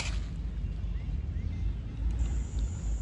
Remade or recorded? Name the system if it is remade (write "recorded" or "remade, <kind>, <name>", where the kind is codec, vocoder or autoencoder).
recorded